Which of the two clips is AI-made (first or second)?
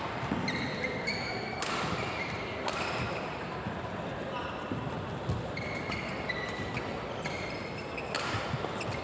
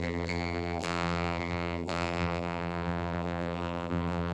second